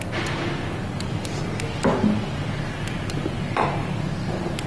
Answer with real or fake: real